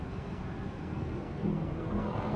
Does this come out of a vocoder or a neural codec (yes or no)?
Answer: yes